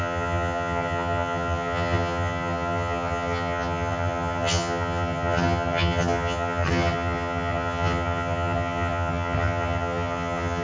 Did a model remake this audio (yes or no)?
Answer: yes